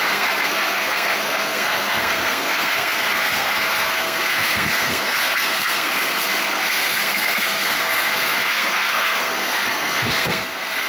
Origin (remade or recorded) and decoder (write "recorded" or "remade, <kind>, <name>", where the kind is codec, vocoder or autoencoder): remade, codec, SNAC